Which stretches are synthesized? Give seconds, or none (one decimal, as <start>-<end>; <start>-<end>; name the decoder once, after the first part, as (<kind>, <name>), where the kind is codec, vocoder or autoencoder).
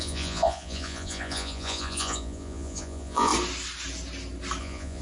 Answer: 0.0-3.3 (vocoder, Vocos); 4.6-5.0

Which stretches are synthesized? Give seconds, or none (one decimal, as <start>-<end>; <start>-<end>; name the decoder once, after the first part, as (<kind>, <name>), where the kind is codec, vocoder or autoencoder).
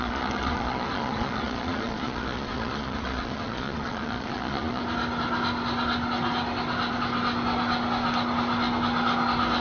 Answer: 0.0-4.8 (vocoder, Vocos)